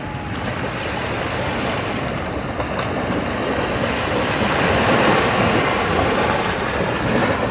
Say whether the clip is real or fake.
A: real